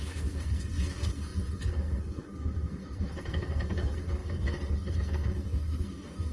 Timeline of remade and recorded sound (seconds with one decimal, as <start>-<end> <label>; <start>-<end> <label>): 0.0-6.3 remade